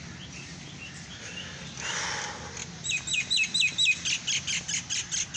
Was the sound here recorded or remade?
recorded